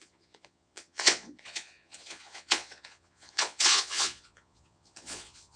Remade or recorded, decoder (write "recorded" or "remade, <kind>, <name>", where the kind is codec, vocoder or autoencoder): remade, vocoder, Vocos